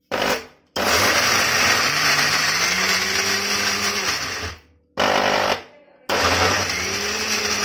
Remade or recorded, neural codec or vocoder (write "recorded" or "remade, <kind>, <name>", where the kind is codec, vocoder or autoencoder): recorded